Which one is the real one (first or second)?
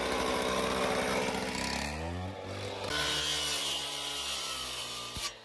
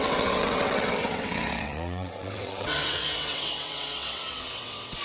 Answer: first